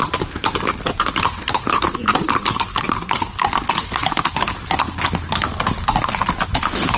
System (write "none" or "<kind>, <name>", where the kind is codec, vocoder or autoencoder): none